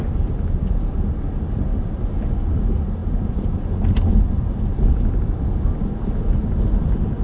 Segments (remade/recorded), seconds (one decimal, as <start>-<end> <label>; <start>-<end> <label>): 0.0-7.2 recorded